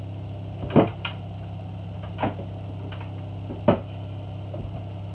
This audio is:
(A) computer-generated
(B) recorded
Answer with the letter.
B